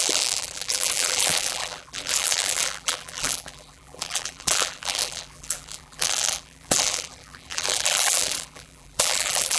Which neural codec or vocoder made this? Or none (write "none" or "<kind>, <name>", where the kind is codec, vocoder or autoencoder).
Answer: vocoder, BigVGAN v2